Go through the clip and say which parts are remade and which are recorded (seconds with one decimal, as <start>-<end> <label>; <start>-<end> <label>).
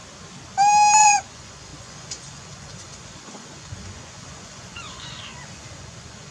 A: 0.0-1.0 recorded; 1.0-6.3 remade